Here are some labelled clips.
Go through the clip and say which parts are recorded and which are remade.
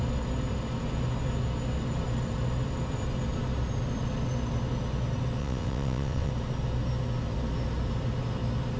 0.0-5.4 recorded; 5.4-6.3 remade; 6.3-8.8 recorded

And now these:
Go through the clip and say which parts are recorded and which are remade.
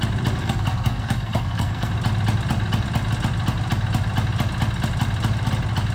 0.0-0.4 recorded; 0.4-1.9 remade; 1.9-5.9 recorded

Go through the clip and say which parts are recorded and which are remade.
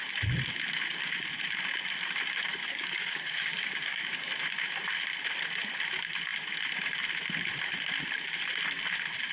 0.0-2.5 recorded; 2.5-4.3 remade; 4.3-9.3 recorded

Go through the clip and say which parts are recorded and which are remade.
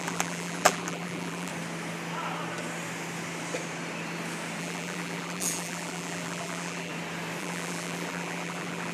0.0-1.5 remade; 1.5-4.6 recorded; 4.6-6.9 remade; 6.9-7.4 recorded; 7.4-8.9 remade